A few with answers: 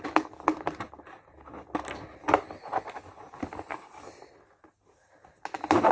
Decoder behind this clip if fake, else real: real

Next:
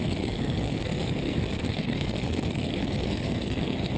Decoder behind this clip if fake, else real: fake, codec, SNAC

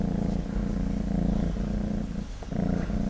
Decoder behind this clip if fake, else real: real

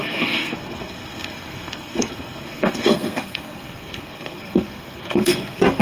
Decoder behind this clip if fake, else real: fake, codec, SNAC